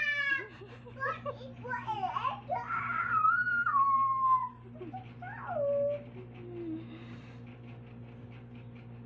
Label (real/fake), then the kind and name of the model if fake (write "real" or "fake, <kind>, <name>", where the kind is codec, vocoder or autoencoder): real